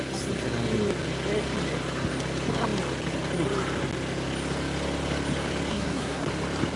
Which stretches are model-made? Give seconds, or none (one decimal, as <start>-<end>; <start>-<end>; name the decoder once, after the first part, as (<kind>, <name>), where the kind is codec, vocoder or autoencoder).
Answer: 5.7-6.3 (codec, SNAC)